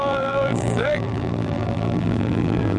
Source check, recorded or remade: remade